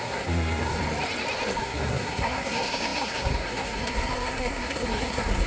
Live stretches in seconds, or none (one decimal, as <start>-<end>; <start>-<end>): 0.8-1.6